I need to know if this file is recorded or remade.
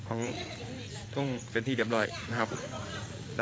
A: remade